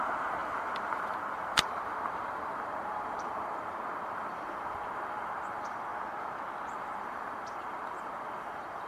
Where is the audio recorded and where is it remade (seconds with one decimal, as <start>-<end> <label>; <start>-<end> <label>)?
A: 0.0-5.9 remade; 5.9-6.7 recorded; 6.7-8.9 remade